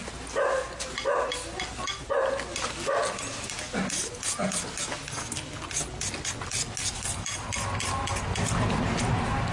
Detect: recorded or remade recorded